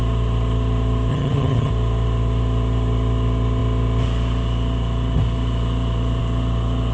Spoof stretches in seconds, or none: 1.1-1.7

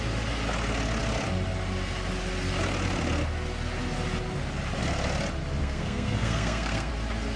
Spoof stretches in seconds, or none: 5.6-6.9

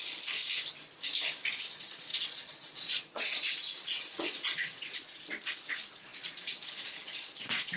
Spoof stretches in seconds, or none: 0.0-0.4; 1.6-7.8

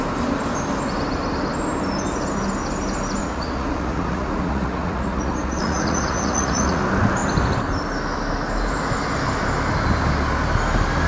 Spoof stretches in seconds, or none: 3.2-6.8

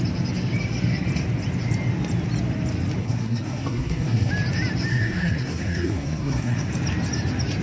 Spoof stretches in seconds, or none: 3.0-4.3; 4.9-6.7